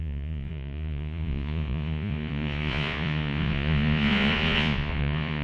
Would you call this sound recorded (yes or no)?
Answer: no